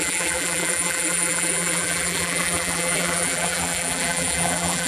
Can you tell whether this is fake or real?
fake